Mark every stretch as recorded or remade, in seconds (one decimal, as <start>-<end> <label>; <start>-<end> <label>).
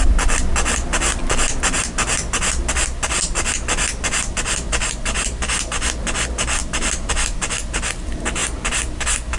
0.0-9.4 recorded